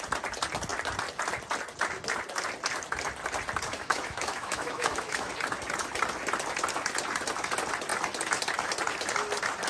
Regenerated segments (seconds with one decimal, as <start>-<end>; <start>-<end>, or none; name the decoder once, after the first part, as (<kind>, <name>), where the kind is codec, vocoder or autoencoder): 3.7-5.3 (autoencoder, DAC-VAE)